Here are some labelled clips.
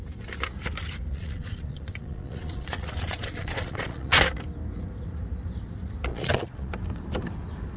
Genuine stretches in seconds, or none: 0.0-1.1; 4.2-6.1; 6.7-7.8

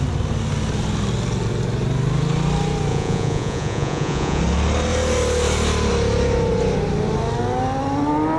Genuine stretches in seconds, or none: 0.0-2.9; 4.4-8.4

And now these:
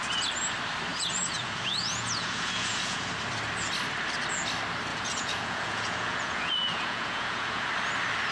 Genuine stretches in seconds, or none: 0.0-0.9; 3.1-4.9; 7.7-8.3

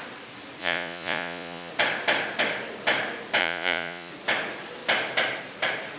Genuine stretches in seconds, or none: 0.0-0.6; 1.7-3.4; 4.1-6.0

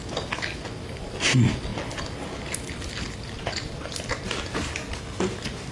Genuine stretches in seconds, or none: 0.0-5.7